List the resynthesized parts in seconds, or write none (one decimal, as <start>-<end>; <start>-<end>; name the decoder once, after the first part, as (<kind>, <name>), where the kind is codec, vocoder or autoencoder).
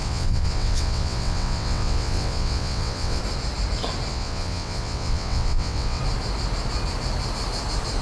0.0-3.2 (vocoder, WaveNeXt); 4.1-6.0